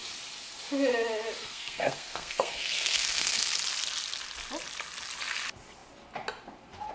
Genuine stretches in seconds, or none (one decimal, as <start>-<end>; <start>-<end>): 0.0-1.4; 3.6-6.9